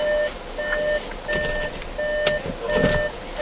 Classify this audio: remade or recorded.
recorded